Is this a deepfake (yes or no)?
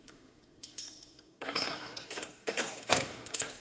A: yes